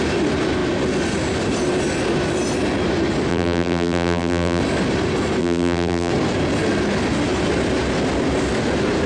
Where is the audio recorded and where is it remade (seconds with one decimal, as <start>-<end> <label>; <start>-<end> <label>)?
0.0-3.3 recorded; 3.3-4.6 remade; 4.6-5.4 recorded; 5.4-6.1 remade; 6.1-9.1 recorded